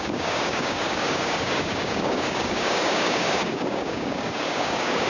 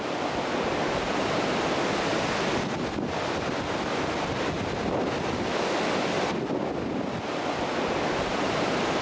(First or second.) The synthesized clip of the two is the first